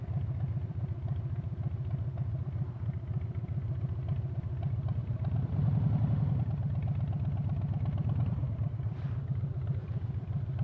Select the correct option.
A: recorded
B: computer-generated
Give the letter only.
A